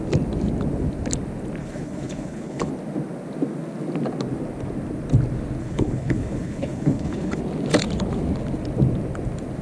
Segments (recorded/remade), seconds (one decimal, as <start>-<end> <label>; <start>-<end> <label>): 0.0-1.6 recorded; 1.6-2.7 remade; 2.7-5.6 recorded; 5.6-7.4 remade; 7.4-9.6 recorded